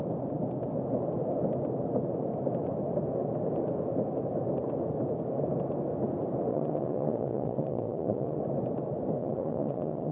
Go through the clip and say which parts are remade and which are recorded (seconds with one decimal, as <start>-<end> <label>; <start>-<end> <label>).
0.0-6.5 recorded; 6.5-8.4 remade; 8.4-9.2 recorded; 9.2-10.1 remade